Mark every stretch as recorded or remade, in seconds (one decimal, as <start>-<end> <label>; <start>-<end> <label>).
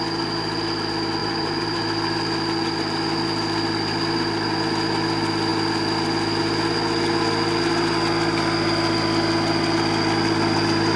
0.0-1.2 recorded; 1.2-1.8 remade; 1.8-11.0 recorded